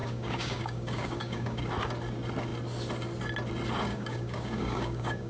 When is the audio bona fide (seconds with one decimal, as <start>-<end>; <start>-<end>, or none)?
1.6-3.9